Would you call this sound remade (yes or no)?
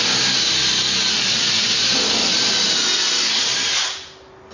no